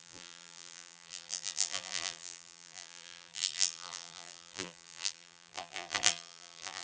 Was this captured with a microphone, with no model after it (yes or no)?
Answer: no